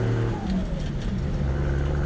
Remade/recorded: recorded